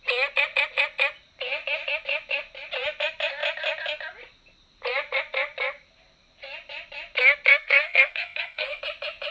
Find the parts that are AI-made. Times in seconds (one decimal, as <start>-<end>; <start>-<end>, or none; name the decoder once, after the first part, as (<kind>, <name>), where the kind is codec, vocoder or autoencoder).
7.5-8.8 (codec, SNAC)